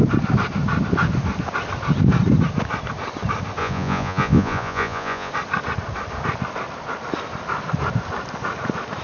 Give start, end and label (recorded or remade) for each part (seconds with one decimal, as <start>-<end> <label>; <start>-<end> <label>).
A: 0.0-3.6 recorded; 3.6-5.3 remade; 5.3-9.0 recorded